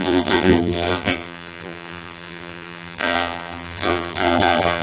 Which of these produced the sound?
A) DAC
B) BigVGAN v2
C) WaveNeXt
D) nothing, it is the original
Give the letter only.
B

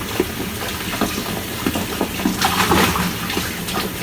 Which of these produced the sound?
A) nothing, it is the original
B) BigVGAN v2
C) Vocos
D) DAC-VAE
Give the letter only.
A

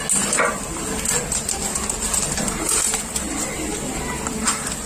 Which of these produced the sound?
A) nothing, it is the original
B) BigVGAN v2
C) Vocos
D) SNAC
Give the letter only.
A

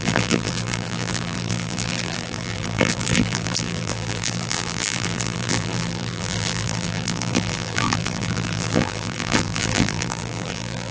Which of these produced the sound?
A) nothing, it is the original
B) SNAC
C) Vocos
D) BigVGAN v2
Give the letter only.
D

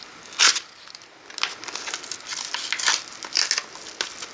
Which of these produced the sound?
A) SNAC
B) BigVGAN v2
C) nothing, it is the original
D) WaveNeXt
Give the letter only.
C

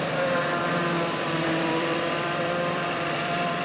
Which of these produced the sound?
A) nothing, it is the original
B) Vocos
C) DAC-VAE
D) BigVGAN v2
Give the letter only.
D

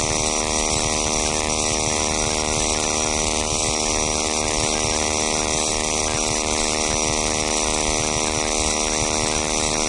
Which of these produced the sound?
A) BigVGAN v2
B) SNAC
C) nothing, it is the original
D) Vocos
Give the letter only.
C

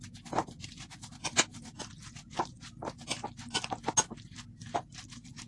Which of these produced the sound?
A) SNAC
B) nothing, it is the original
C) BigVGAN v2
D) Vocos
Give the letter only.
B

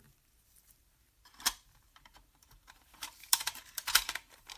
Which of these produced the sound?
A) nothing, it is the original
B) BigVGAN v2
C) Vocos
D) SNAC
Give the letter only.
B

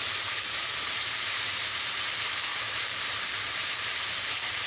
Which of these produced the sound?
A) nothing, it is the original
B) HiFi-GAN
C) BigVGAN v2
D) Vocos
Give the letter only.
C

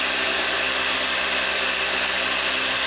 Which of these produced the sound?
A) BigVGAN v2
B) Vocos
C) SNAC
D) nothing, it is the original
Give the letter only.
D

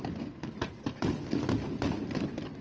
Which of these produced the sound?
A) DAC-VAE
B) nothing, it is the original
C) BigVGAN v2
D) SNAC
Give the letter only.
C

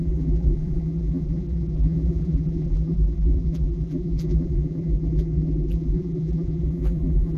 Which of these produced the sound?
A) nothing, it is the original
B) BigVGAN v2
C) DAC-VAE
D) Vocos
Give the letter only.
B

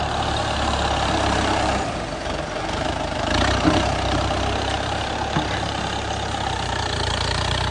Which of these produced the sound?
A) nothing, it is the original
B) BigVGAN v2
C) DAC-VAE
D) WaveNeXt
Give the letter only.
B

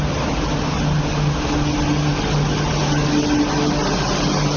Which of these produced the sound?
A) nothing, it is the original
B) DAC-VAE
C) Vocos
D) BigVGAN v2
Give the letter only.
A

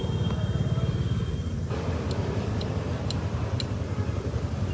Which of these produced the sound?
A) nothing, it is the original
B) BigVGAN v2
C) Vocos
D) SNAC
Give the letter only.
A